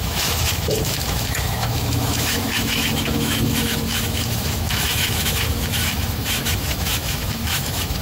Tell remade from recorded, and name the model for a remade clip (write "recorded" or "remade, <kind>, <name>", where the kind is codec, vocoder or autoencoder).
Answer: remade, autoencoder, DAC-VAE